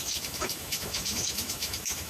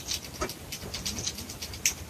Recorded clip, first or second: second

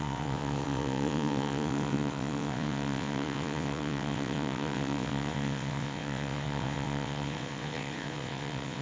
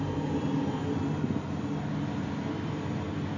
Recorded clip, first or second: second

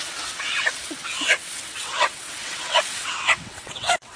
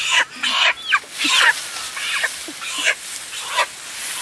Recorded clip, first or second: second